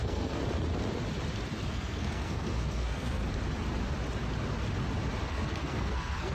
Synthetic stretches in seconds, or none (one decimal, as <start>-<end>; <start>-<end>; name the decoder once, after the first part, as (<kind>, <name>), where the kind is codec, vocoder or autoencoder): 0.0-0.4 (codec, SNAC); 1.7-3.2; 5.3-6.3